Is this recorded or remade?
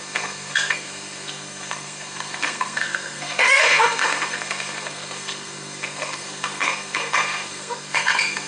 remade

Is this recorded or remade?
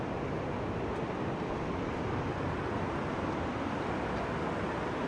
recorded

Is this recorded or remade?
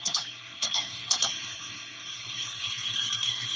remade